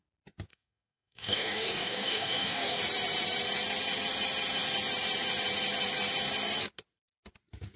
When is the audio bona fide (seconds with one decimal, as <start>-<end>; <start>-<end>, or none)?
0.0-0.5; 2.8-7.8